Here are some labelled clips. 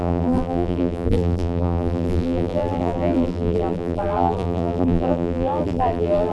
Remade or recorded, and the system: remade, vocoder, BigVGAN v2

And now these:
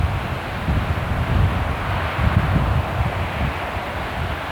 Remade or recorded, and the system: recorded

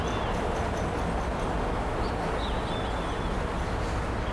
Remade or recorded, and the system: recorded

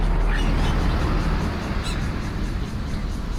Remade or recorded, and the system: recorded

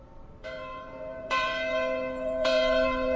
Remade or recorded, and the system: remade, vocoder, BigVGAN v2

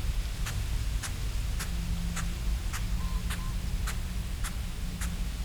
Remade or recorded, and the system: recorded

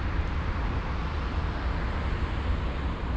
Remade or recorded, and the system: remade, vocoder, BigVGAN v2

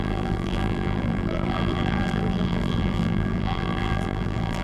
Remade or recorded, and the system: remade, vocoder, BigVGAN v2